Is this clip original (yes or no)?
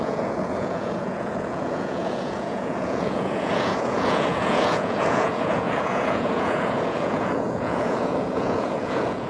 no